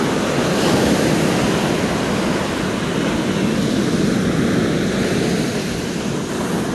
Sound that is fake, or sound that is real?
real